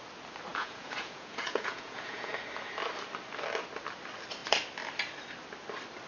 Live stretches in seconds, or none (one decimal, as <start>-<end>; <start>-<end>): 0.0-0.5; 2.3-6.1